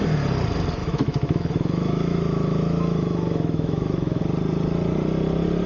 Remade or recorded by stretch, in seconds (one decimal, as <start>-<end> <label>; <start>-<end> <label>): 0.0-0.8 recorded; 0.8-4.2 remade; 4.2-5.7 recorded